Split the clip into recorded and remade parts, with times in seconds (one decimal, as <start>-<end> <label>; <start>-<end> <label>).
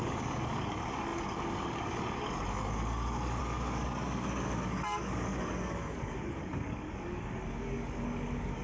0.0-8.6 remade